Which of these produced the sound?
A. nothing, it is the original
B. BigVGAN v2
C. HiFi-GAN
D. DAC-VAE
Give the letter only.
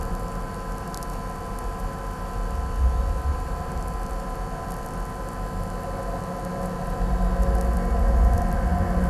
A